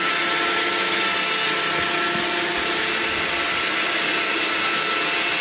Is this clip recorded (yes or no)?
yes